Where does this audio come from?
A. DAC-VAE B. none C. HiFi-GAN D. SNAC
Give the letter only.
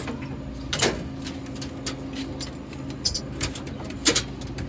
B